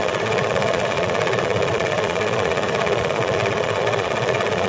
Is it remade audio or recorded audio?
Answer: remade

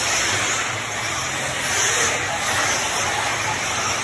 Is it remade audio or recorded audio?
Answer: recorded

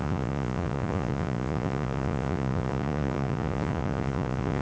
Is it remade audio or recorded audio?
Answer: remade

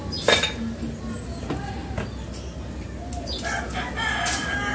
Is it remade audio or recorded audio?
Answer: recorded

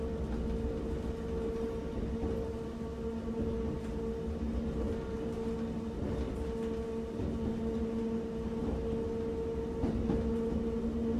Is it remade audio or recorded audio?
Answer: recorded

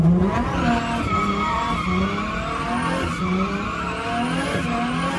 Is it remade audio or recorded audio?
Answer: recorded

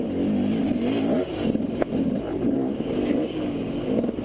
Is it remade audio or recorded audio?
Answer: recorded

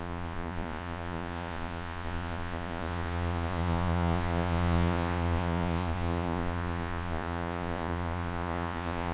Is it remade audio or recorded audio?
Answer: remade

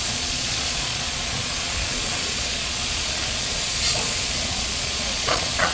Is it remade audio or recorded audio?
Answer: remade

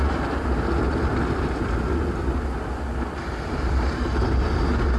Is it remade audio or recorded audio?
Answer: recorded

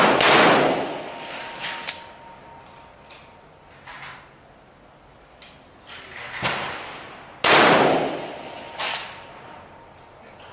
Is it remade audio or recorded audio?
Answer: recorded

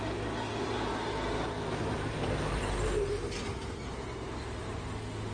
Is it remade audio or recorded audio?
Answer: recorded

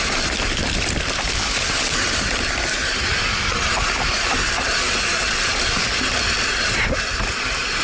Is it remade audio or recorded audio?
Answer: recorded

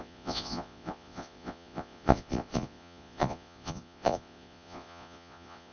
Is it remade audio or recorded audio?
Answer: remade